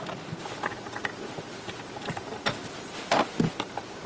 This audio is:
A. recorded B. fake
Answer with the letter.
A